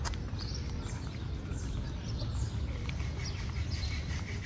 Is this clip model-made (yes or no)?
no